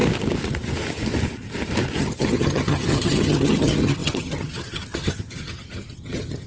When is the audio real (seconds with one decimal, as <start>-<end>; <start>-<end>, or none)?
0.0-2.0